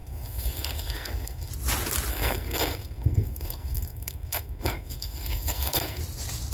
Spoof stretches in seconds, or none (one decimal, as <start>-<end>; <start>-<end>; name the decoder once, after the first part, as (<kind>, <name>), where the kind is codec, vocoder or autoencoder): 0.0-1.5 (codec, SNAC); 2.1-6.0